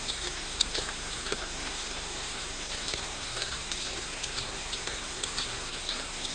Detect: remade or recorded remade